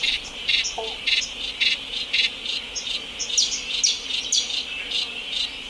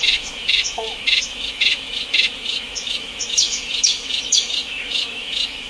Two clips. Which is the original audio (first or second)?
first